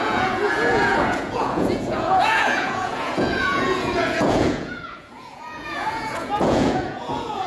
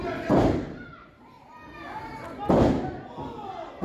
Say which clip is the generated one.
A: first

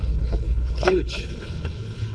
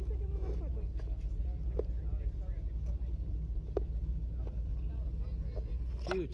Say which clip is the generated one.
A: first